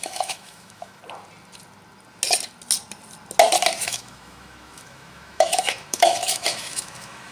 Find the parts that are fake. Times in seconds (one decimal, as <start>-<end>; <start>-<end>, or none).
0.0-1.0; 3.8-7.3